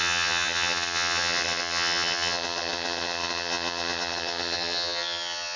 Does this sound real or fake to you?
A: fake